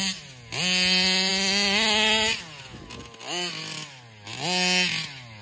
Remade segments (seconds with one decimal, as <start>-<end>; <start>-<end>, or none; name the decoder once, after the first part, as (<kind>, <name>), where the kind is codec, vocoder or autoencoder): none